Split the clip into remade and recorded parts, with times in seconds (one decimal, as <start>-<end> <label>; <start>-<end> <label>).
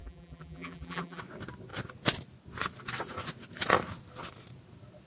0.0-1.2 remade; 1.2-5.1 recorded